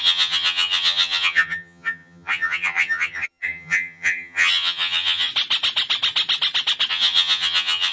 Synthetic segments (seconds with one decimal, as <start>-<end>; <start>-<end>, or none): 0.0-5.3; 6.9-7.9